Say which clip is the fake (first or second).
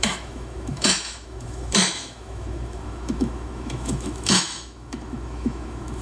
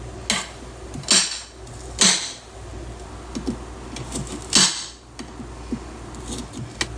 first